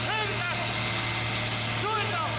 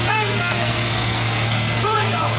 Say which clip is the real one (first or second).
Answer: first